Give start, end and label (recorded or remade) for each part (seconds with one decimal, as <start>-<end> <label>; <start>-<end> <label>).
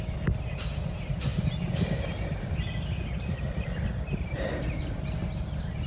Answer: 0.0-5.9 recorded